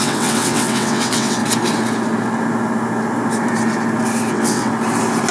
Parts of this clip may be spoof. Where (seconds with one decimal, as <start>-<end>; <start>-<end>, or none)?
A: 0.0-1.4; 4.3-4.7